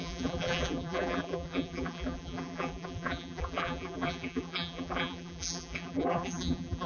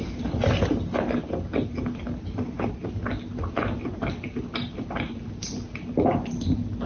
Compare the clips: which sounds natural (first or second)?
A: second